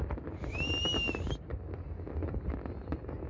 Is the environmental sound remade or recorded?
recorded